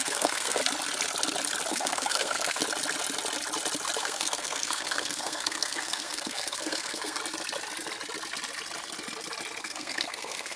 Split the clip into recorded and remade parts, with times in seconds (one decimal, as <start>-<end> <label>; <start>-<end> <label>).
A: 0.0-0.6 remade; 0.6-1.7 recorded; 1.7-2.6 remade; 2.6-4.0 recorded; 4.0-7.2 remade; 7.2-9.6 recorded; 9.6-10.6 remade